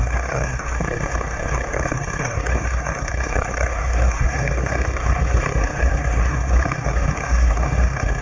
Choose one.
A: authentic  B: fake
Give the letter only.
B